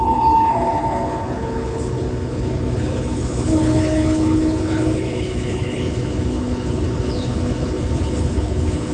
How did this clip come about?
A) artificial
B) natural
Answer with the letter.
A